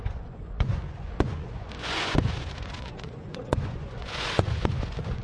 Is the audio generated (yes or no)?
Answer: yes